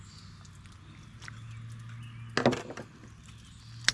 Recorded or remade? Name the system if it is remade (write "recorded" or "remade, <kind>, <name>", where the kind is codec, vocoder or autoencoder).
recorded